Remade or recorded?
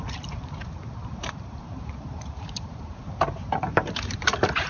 remade